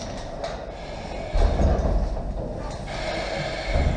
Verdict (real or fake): real